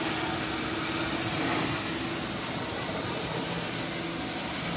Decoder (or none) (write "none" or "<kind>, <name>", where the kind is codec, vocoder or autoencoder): none